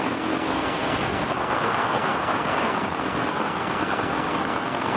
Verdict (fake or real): fake